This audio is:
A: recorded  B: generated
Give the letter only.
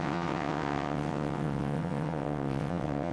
B